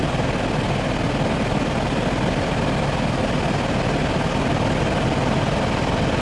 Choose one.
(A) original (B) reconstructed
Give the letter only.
A